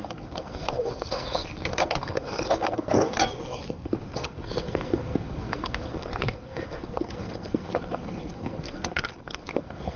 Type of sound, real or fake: fake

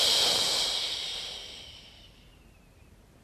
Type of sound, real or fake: real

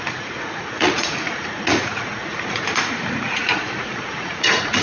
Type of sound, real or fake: fake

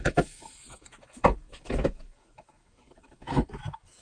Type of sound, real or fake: fake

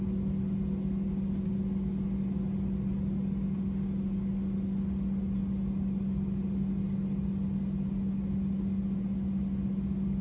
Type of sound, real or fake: real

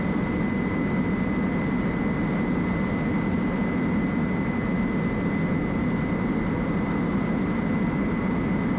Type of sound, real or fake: real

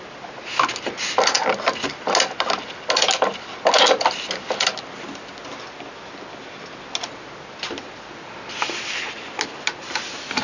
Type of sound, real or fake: real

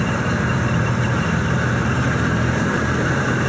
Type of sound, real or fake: fake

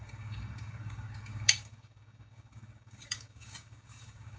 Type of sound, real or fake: fake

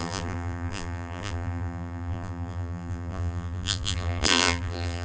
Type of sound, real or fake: fake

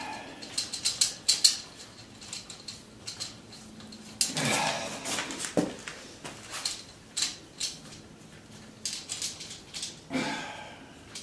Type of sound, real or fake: real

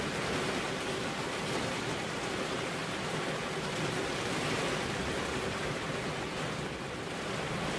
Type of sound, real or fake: real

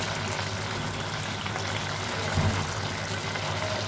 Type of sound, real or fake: real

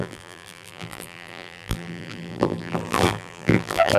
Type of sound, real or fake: fake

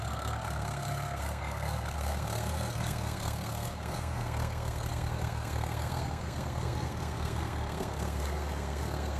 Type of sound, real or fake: fake